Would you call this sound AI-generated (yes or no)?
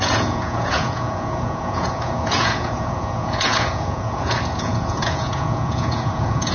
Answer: yes